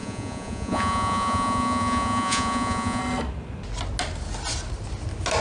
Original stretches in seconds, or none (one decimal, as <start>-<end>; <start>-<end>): 3.0-5.4